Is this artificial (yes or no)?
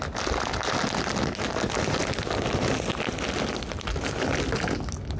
no